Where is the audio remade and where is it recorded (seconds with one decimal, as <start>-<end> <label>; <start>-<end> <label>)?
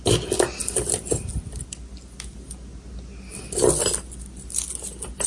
0.0-5.3 recorded